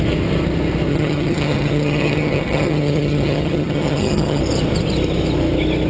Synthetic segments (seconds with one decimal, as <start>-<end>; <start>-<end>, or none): 0.9-4.4